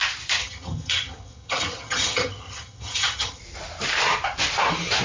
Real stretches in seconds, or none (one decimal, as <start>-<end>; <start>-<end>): 0.0-0.4; 3.4-5.0